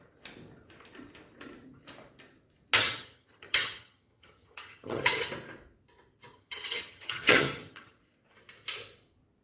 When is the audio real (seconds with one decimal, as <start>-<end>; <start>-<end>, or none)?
0.0-2.8; 5.3-6.3; 8.0-9.4